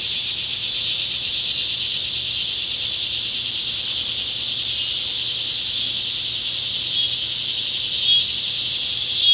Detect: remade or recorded recorded